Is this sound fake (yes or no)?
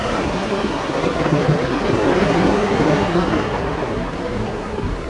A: yes